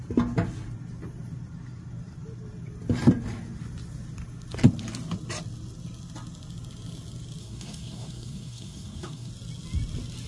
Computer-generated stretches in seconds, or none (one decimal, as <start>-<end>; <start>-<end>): 7.4-9.3